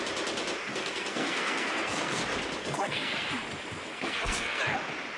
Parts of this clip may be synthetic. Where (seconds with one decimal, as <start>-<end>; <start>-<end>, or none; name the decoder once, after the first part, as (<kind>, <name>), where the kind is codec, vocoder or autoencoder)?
0.7-2.2 (codec, SNAC); 2.6-3.3; 3.9-4.6